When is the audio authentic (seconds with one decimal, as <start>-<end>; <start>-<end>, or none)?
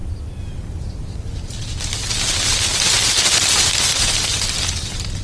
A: 0.0-5.2